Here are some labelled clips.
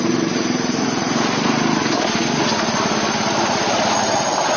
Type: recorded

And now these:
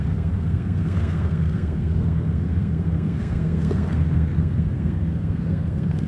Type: remade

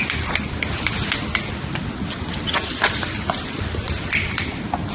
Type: recorded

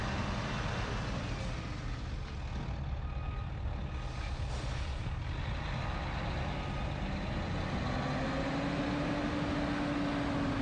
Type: recorded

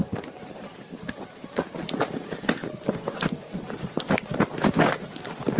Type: recorded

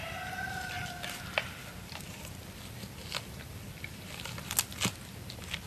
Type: recorded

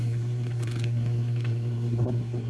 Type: remade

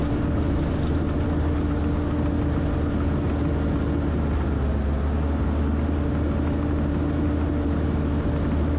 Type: recorded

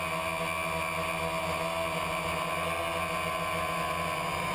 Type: recorded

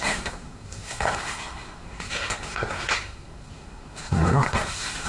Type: remade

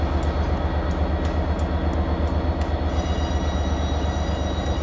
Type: recorded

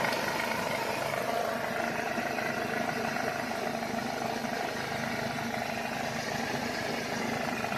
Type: recorded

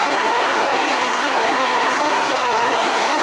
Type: remade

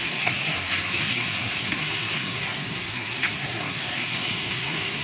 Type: remade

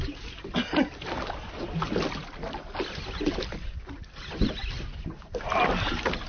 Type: recorded